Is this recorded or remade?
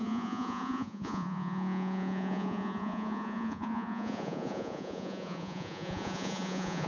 remade